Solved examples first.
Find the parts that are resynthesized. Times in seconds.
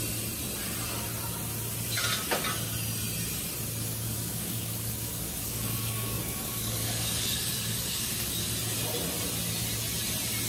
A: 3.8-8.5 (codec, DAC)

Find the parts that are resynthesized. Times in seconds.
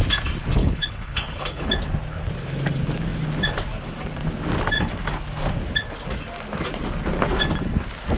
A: 0.6-1.7 (codec, HILCodec)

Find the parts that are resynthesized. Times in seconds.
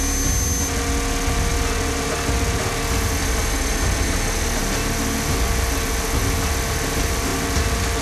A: none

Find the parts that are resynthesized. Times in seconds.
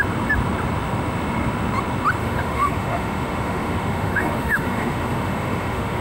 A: 2.2-6.0 (autoencoder, DAC-VAE)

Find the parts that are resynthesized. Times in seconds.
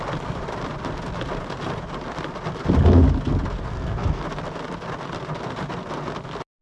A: 3.6-4.2 (codec, SNAC)